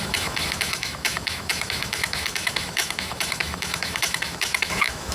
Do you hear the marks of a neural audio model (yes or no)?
yes